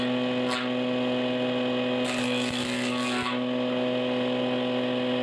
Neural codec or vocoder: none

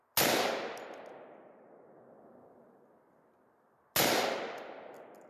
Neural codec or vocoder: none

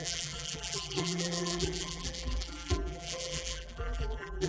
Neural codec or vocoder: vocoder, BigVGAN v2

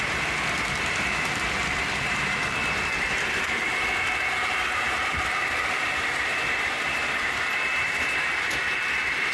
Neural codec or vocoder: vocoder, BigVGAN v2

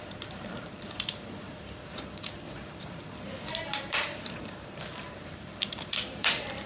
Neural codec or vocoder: vocoder, BigVGAN v2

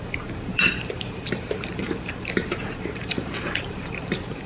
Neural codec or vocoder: vocoder, BigVGAN v2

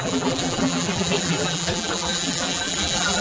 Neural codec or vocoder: vocoder, BigVGAN v2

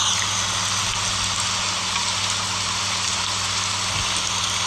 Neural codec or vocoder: none